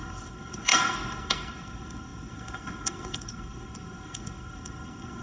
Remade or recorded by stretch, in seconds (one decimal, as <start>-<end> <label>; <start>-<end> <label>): 0.0-5.2 remade